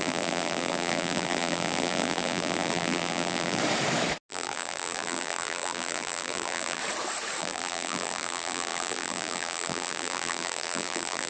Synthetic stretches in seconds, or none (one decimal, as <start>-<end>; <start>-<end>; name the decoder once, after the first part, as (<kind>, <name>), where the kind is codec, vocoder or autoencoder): 0.0-3.6 (vocoder, BigVGAN v2); 4.3-6.8; 7.4-11.3